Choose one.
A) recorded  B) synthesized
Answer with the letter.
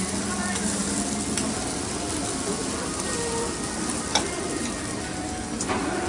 A